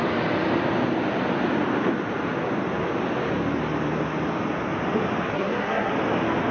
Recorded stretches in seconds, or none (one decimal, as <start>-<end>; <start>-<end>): 0.0-5.3; 5.9-6.5